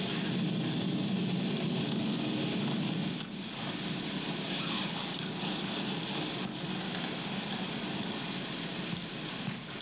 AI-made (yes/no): no